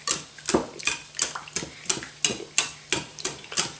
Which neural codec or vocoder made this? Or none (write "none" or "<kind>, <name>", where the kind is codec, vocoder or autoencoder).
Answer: none